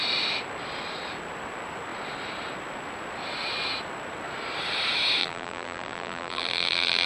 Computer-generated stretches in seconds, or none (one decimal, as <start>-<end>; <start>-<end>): 5.2-7.1